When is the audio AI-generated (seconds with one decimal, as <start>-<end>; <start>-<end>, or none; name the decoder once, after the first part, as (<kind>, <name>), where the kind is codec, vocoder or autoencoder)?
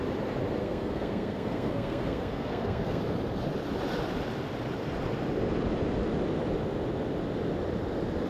0.6-3.0 (codec, SNAC)